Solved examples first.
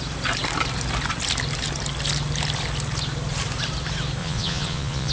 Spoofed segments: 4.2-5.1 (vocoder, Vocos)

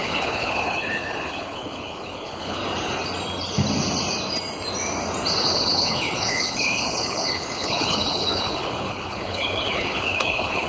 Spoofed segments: 0.0-2.6 (codec, HILCodec); 5.4-10.7